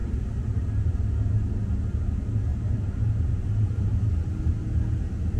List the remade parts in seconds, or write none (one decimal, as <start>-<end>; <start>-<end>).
0.0-1.0; 2.5-3.9